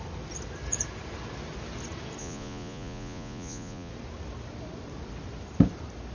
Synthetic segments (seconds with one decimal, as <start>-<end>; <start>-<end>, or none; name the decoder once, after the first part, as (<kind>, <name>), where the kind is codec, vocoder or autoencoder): 2.2-3.9 (vocoder, Vocos)

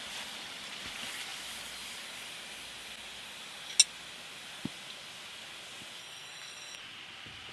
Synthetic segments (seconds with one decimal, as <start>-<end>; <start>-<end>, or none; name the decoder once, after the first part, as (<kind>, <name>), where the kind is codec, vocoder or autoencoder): 6.0-6.8 (codec, SNAC)

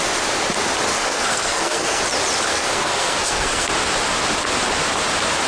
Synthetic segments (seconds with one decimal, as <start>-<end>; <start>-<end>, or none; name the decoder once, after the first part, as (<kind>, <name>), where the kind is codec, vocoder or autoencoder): 0.9-2.0 (codec, SNAC); 2.5-3.7

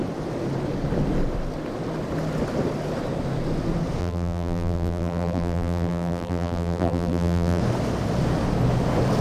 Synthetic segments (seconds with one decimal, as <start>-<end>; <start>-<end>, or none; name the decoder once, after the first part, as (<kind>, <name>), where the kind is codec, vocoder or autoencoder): 4.0-7.6 (vocoder, BigVGAN v2)